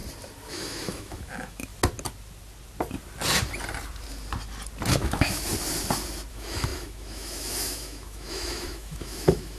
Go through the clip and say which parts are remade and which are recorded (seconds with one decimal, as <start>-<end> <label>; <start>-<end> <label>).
0.0-0.5 recorded; 0.5-1.7 remade; 1.7-4.9 recorded; 4.9-5.5 remade; 5.5-6.3 recorded; 6.3-9.6 remade